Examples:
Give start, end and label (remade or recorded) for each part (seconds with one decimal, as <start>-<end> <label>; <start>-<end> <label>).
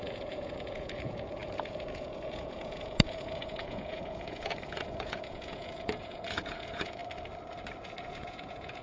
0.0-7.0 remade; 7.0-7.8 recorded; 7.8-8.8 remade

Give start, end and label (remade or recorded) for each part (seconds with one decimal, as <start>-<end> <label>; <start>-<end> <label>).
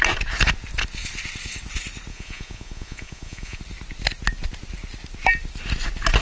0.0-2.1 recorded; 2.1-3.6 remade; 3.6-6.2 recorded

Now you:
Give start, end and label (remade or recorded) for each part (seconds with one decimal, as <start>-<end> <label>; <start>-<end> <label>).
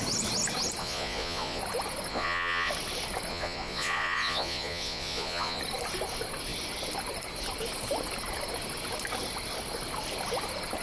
0.0-0.8 recorded; 0.8-1.6 remade; 1.6-2.1 recorded; 2.1-2.7 remade; 2.7-3.3 recorded; 3.3-5.6 remade; 5.6-10.8 recorded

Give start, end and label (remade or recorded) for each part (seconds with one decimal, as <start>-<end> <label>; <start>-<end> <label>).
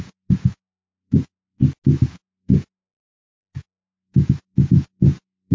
0.0-1.6 remade; 1.6-2.1 recorded; 2.1-5.5 remade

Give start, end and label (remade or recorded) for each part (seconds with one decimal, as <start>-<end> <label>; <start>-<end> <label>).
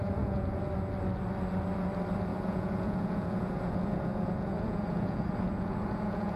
0.0-0.6 remade; 0.6-2.3 recorded; 2.3-6.4 remade